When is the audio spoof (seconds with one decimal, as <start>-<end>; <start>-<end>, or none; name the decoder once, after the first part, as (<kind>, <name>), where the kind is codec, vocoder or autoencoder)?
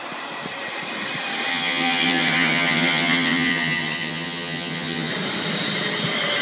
1.5-5.1 (vocoder, HiFi-GAN)